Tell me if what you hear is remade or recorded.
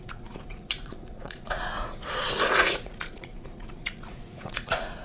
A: remade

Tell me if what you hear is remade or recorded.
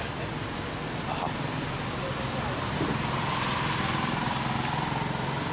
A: recorded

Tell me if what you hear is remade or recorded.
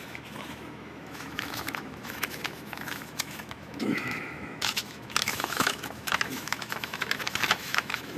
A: remade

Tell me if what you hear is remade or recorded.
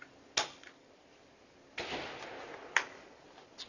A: recorded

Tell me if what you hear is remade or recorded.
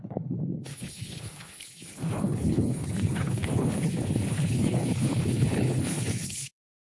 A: remade